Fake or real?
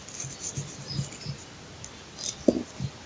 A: real